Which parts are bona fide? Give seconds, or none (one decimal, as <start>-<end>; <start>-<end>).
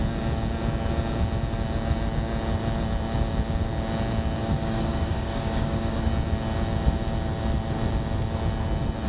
0.0-4.4; 6.1-9.1